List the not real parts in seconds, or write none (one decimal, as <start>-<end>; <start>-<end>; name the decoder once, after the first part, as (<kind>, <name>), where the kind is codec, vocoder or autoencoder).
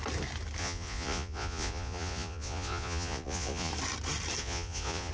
0.6-3.7 (vocoder, Vocos); 4.4-5.1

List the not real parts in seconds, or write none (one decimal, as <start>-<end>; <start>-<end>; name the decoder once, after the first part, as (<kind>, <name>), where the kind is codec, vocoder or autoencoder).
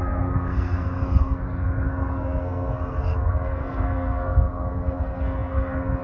0.0-6.0 (codec, SNAC)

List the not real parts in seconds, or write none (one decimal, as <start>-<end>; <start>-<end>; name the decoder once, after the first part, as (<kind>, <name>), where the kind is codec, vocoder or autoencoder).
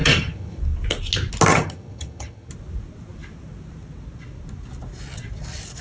0.0-0.6 (vocoder, HiFi-GAN); 1.5-2.5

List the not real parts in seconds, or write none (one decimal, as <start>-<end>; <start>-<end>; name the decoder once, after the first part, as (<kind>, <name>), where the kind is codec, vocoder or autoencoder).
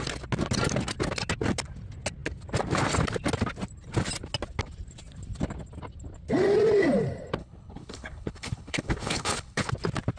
7.4-9.7 (codec, HILCodec)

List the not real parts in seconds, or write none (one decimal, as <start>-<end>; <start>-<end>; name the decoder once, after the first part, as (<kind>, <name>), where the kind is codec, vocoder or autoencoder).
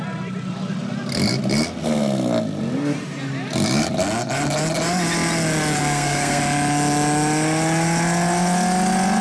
5.8-6.4 (codec, SNAC)